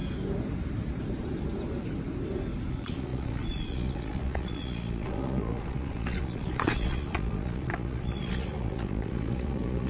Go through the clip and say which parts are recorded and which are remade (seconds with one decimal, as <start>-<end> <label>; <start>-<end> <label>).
0.0-2.7 recorded; 2.7-9.9 remade